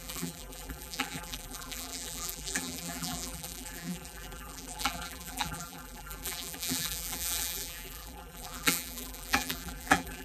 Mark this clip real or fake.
fake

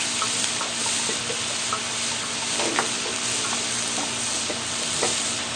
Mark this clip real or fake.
real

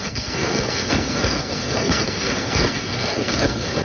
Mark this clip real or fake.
fake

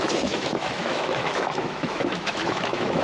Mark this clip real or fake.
fake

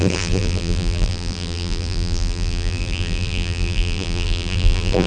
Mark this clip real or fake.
fake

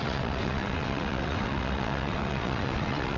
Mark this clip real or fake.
fake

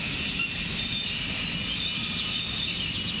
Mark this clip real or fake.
real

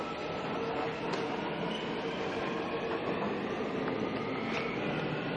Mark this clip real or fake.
real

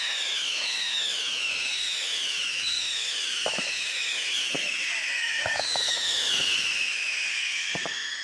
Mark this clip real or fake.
fake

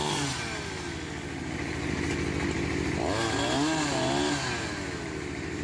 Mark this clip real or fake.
real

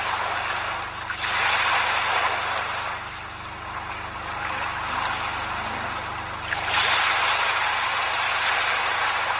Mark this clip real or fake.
real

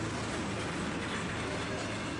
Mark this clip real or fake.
real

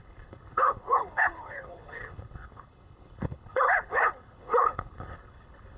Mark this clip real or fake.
fake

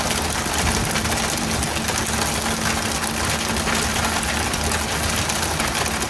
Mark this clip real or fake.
real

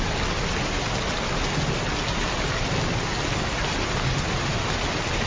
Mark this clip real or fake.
real